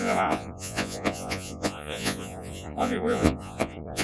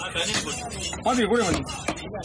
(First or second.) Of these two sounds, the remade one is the first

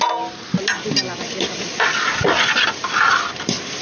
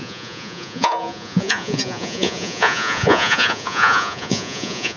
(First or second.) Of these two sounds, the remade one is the second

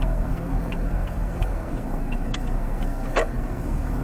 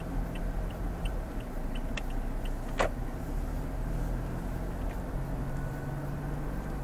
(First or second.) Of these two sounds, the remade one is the first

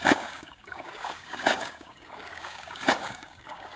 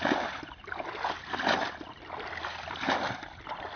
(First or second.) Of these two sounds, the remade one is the first